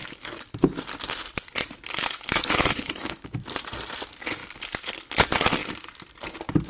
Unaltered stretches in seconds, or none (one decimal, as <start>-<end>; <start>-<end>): 0.8-2.0; 3.3-6.7